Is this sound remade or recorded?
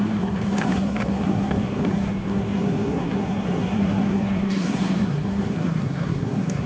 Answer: remade